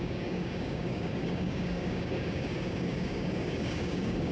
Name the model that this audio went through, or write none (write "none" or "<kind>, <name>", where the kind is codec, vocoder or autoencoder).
codec, DAC